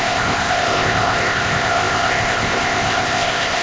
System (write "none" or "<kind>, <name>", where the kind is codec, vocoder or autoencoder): codec, ZipCodec